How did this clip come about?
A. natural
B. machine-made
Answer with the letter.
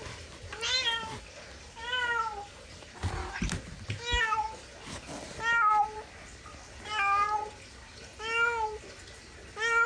A